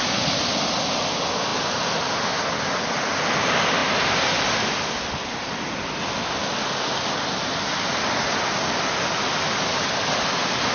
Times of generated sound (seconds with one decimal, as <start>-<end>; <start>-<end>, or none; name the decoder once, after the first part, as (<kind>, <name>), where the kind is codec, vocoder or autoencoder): none